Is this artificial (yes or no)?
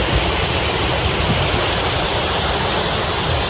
no